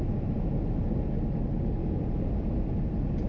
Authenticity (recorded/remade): recorded